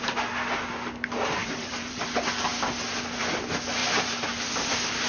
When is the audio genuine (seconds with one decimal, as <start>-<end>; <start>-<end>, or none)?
0.0-1.4; 2.0-3.8; 4.4-5.1